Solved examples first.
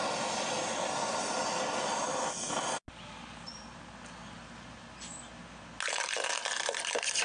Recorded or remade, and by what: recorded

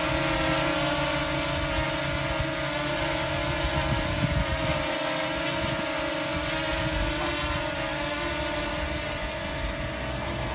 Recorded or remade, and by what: recorded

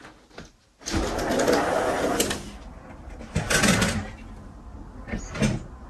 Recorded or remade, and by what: recorded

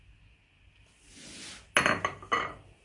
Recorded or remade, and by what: recorded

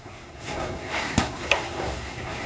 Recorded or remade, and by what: remade, codec, SNAC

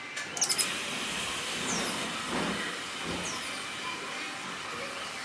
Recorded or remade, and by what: recorded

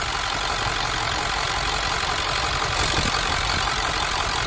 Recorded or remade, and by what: recorded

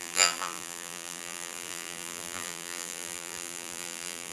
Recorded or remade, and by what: remade, vocoder, BigVGAN v2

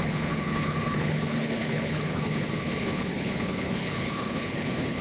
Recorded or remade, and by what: remade, codec, HILCodec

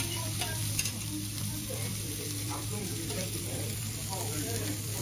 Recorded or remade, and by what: remade, vocoder, BigVGAN v2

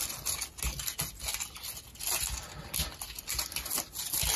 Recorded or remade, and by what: recorded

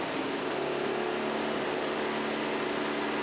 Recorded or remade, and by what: recorded